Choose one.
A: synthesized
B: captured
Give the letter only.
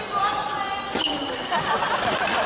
B